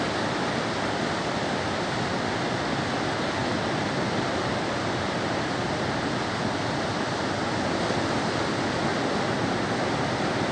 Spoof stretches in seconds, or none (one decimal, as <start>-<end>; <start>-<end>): none